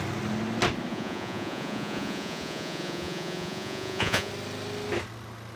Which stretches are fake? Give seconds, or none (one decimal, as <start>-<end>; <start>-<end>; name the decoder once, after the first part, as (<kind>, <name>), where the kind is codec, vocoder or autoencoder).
0.9-4.3 (vocoder, Vocos)